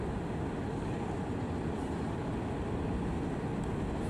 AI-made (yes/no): no